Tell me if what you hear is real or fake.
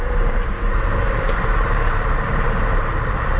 fake